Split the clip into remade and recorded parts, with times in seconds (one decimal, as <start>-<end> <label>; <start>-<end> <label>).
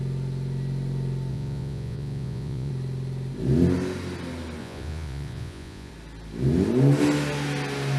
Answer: 0.0-1.3 recorded; 1.3-2.7 remade; 2.7-4.6 recorded; 4.6-5.9 remade; 5.9-8.0 recorded